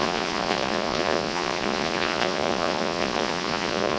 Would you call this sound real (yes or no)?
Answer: no